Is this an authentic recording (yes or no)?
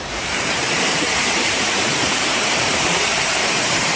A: no